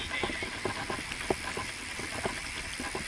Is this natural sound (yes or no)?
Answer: yes